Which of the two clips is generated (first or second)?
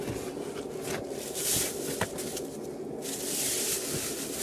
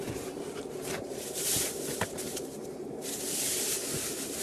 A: second